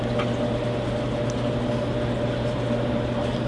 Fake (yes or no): no